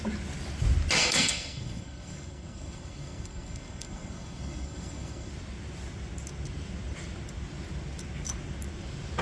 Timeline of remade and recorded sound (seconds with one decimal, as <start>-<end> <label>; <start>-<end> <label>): 0.0-1.0 recorded; 1.0-5.3 remade; 5.3-9.2 recorded

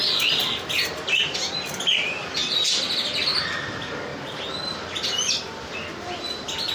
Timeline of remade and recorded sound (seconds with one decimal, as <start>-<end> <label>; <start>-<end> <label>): 0.0-6.7 recorded

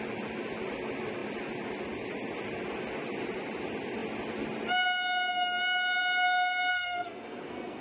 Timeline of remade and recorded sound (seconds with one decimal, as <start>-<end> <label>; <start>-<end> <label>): 0.0-6.7 recorded; 6.7-7.8 remade

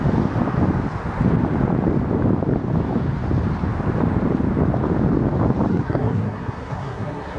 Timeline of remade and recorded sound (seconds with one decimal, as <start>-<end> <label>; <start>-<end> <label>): 0.0-5.7 recorded; 5.7-7.4 remade

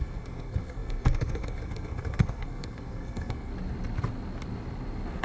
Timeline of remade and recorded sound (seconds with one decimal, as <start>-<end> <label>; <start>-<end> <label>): 0.0-3.5 remade; 3.5-5.2 recorded

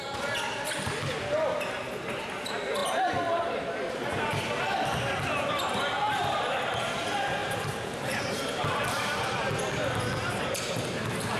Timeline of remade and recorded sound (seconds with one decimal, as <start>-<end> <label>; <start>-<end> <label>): 0.0-7.4 recorded; 7.4-8.2 remade; 8.2-11.4 recorded